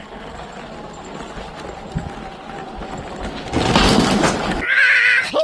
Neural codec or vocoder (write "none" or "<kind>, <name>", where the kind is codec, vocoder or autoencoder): none